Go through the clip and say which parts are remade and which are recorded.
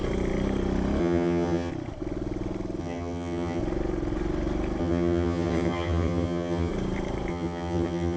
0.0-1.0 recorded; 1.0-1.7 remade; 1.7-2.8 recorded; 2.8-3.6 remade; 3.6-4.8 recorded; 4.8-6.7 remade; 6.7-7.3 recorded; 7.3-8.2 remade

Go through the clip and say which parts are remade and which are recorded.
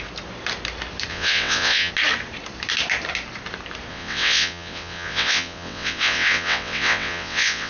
0.0-1.1 recorded; 1.1-1.9 remade; 1.9-3.9 recorded; 3.9-7.7 remade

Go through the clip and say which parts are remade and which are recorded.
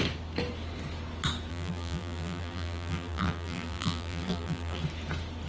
0.0-1.5 recorded; 1.5-4.8 remade; 4.8-5.5 recorded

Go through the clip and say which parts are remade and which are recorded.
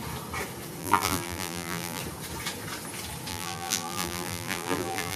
0.0-0.8 recorded; 0.8-2.0 remade; 2.0-3.3 recorded; 3.3-5.2 remade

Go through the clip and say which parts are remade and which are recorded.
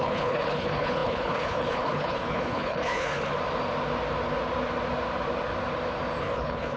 0.0-3.3 remade; 3.3-6.2 recorded; 6.2-6.8 remade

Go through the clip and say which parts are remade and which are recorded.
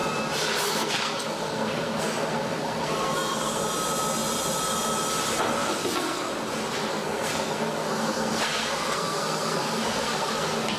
0.0-0.7 recorded; 0.7-3.6 remade; 3.6-5.5 recorded; 5.5-6.3 remade; 6.3-6.9 recorded; 6.9-10.8 remade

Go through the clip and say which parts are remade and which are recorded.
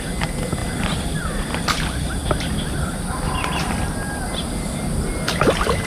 0.0-5.9 recorded